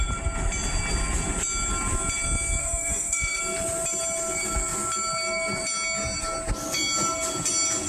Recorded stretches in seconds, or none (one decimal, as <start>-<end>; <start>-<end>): 0.0-2.6; 3.4-7.9